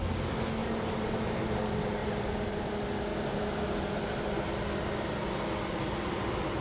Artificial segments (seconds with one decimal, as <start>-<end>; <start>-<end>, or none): 0.6-1.4; 2.0-2.7; 3.1-4.2